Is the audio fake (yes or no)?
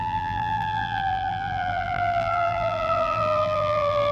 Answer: yes